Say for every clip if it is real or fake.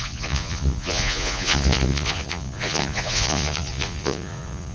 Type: fake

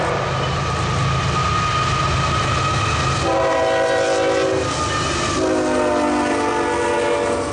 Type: real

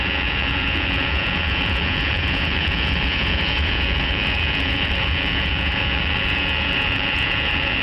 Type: fake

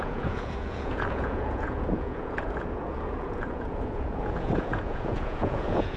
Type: fake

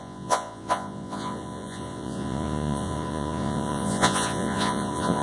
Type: fake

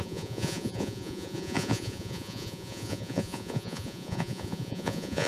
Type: fake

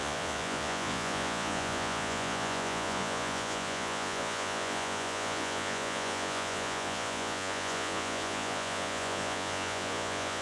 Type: fake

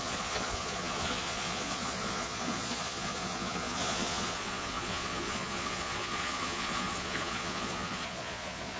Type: fake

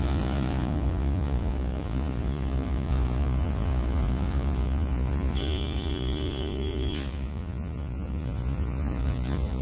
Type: fake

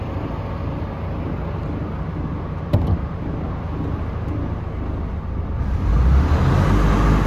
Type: real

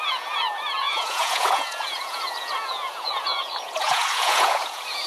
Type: fake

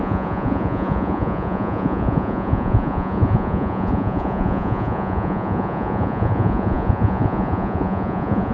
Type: fake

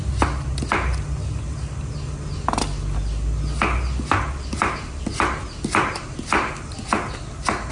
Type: real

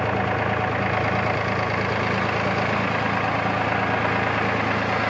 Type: real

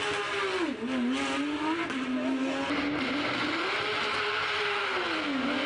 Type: real